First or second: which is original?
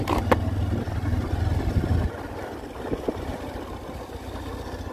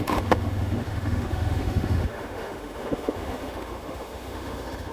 first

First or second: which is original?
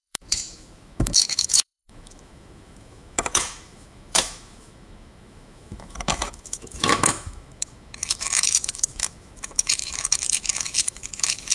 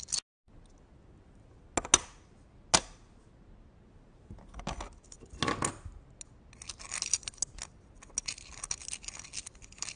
second